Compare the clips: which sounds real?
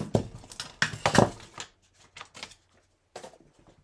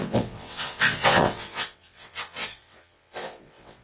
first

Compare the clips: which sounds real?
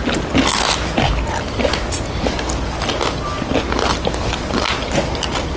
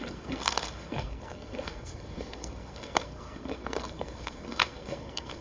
first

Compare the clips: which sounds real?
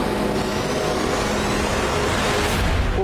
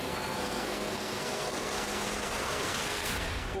first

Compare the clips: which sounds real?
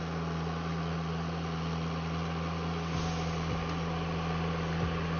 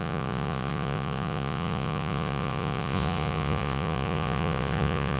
first